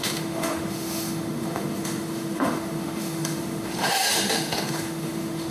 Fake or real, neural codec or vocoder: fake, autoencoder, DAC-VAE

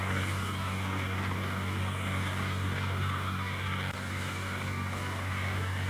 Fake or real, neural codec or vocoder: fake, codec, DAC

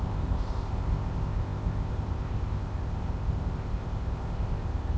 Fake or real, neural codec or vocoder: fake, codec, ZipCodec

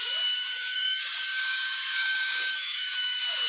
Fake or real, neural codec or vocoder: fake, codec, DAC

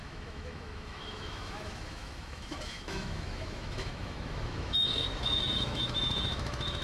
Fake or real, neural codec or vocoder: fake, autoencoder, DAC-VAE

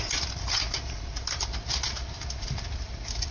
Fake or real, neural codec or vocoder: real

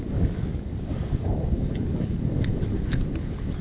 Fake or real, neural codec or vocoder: fake, codec, DAC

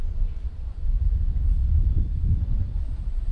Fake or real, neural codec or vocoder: fake, vocoder, BigVGAN v2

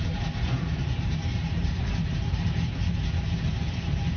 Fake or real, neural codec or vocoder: fake, vocoder, BigVGAN v2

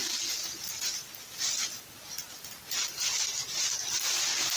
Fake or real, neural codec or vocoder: real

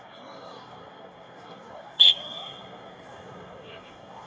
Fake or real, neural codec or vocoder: fake, codec, SNAC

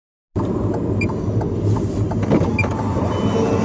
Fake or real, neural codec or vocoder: real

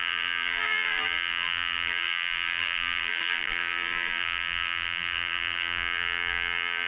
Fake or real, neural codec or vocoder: fake, vocoder, BigVGAN v2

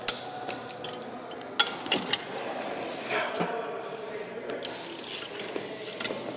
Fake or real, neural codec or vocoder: real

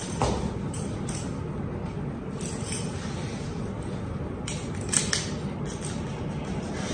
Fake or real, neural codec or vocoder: real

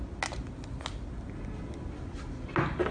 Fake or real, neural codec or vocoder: real